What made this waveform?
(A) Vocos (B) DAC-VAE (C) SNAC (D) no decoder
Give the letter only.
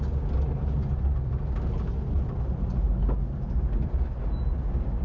D